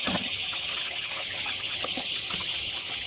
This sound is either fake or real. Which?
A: fake